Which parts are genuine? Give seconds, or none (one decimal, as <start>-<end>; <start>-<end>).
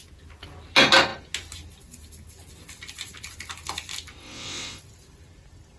0.0-4.2; 4.8-5.8